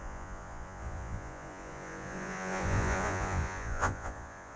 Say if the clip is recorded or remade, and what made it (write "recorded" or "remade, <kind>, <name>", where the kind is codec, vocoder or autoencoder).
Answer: remade, vocoder, Vocos